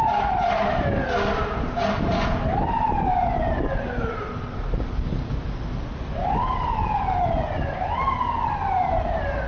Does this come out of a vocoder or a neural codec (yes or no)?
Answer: no